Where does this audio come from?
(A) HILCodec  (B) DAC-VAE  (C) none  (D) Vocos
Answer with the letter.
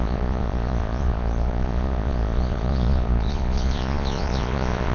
D